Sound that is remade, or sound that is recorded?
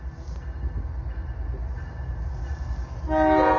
recorded